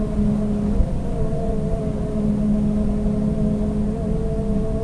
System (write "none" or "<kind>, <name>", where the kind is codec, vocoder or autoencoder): none